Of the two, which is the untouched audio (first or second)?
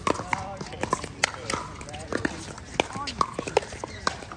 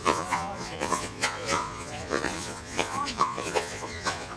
first